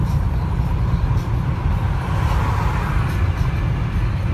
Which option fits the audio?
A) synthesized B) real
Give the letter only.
B